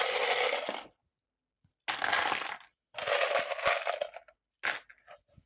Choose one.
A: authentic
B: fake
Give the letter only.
A